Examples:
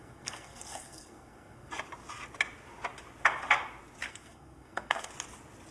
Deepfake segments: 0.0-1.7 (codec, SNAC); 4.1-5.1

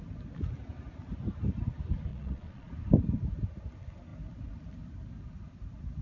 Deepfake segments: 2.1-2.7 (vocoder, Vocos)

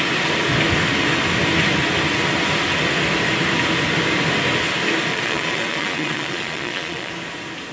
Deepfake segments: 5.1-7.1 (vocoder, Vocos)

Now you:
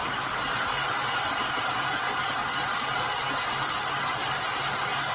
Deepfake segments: none

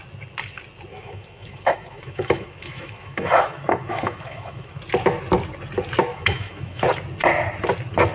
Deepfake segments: 0.9-4.8 (autoencoder, DAC-VAE); 6.1-6.8

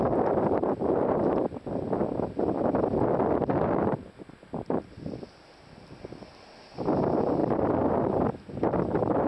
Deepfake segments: 7.4-8.4 (vocoder, BigVGAN v2)